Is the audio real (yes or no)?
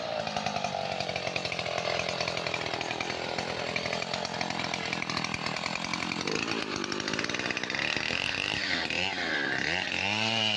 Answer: no